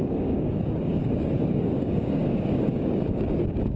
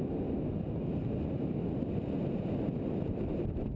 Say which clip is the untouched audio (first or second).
second